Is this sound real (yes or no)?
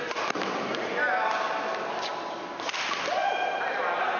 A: yes